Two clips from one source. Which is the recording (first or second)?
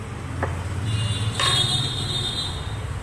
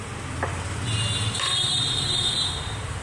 first